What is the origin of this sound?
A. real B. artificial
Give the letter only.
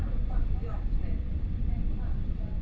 B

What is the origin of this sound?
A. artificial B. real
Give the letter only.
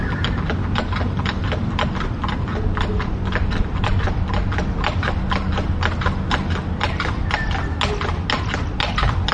B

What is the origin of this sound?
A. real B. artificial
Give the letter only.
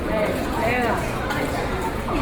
B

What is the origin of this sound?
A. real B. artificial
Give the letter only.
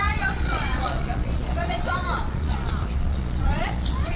B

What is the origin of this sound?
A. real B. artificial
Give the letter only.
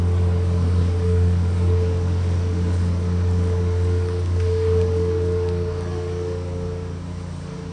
B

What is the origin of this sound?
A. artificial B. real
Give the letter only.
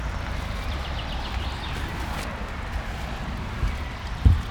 B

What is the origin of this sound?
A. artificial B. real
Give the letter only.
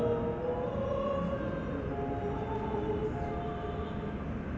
B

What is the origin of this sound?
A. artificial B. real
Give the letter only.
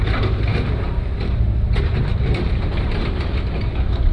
A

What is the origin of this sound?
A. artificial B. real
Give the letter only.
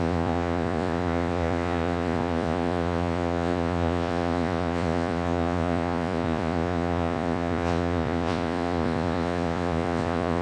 A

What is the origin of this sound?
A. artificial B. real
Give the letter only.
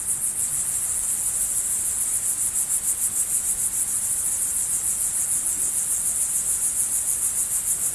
B